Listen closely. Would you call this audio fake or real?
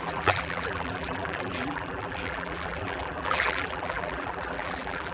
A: fake